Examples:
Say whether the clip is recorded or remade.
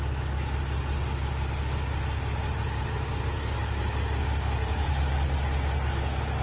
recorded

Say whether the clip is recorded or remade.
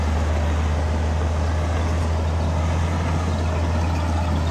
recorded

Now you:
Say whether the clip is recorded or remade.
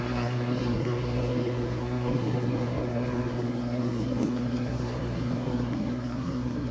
remade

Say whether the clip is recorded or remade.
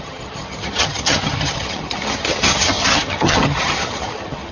remade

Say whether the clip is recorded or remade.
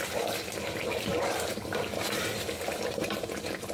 recorded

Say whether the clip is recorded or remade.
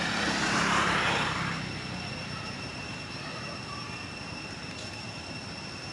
remade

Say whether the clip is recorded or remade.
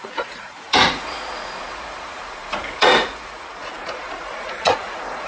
remade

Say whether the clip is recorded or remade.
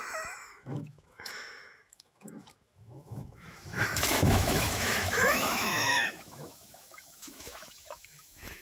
remade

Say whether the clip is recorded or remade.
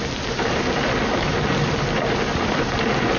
recorded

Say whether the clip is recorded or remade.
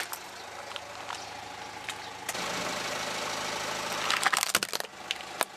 recorded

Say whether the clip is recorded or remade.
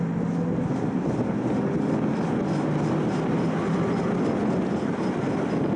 recorded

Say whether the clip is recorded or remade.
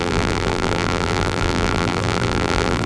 remade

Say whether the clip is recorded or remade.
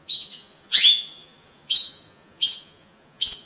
remade